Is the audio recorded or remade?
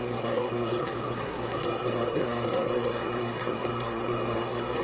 remade